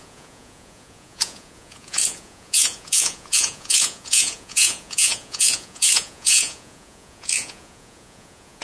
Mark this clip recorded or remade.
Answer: remade